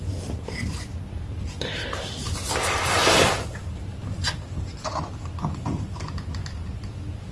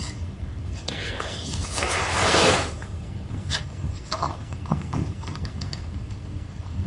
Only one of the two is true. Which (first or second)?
first